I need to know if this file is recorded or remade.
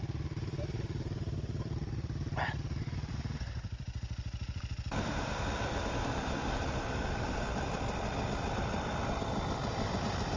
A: remade